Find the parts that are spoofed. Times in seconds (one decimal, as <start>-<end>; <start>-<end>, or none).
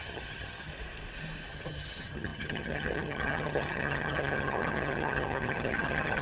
0.0-0.7; 1.5-6.2